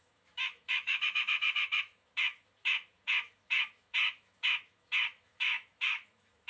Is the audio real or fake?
fake